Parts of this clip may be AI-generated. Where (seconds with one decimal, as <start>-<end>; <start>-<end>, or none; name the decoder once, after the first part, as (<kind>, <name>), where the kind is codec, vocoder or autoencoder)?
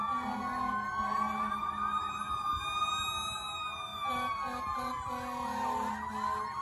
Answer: none